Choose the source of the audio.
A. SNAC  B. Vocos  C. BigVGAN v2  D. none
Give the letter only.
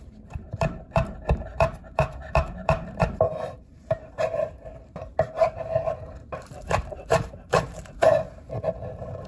C